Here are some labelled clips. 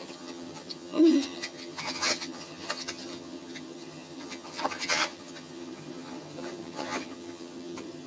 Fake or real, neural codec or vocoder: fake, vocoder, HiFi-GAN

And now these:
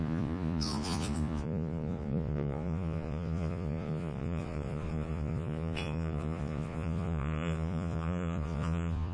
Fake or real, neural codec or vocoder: fake, vocoder, Vocos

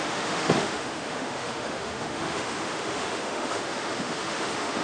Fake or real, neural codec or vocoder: fake, autoencoder, DAC-VAE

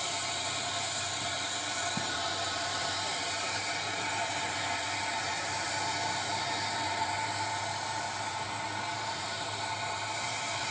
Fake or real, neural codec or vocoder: fake, vocoder, BigVGAN v2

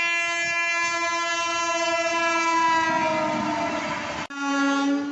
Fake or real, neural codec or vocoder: real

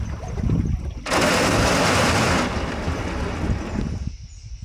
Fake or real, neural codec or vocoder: real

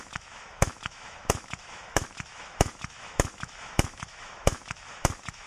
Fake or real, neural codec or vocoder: fake, autoencoder, DAC-VAE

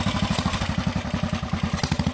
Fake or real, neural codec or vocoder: real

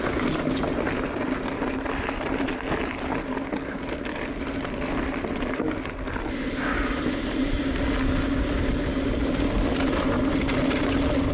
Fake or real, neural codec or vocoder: real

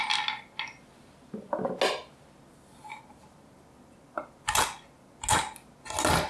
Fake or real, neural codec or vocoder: real